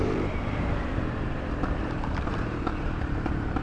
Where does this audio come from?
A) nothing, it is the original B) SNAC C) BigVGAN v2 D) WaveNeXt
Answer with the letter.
C